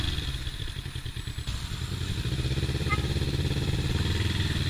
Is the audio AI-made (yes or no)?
yes